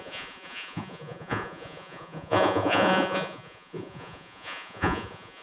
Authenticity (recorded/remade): remade